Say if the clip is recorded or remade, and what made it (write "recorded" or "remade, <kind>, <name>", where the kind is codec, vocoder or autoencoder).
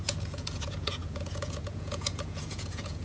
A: remade, vocoder, Vocos